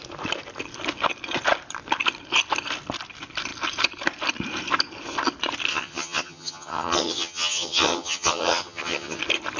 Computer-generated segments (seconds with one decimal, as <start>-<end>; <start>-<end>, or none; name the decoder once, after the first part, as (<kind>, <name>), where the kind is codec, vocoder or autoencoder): 5.7-9.2 (vocoder, HiFi-GAN)